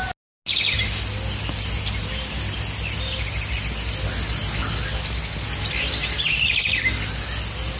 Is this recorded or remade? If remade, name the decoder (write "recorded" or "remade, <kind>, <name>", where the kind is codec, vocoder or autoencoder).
recorded